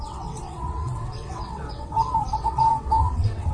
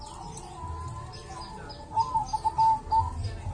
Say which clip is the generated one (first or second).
first